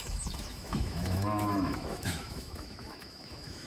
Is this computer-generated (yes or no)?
yes